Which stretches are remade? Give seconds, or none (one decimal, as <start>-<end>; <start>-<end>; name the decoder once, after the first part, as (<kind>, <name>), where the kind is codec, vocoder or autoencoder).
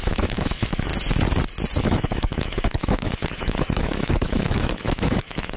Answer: 0.0-0.9 (autoencoder, DAC-VAE); 1.8-5.6